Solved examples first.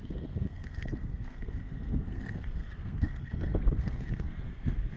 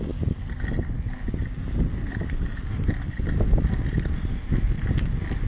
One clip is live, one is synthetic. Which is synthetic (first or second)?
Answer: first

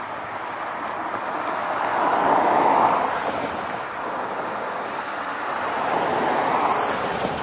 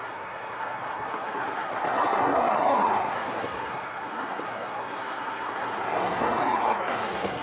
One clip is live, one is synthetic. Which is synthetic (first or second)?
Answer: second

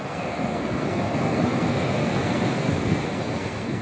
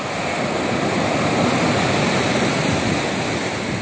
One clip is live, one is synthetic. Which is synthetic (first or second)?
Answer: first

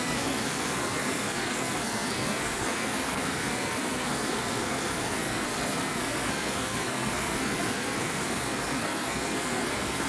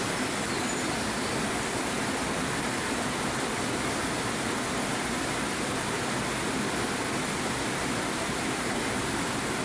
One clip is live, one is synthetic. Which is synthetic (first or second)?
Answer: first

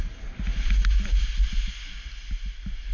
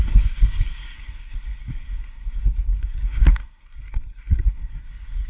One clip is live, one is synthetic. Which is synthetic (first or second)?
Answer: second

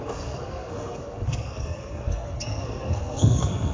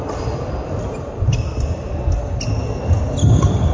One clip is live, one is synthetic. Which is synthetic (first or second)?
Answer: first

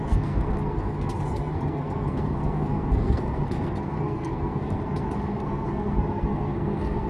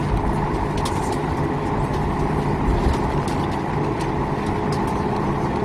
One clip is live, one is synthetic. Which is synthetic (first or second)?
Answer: first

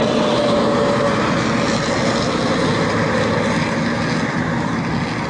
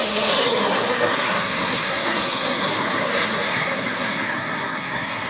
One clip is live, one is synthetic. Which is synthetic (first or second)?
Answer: second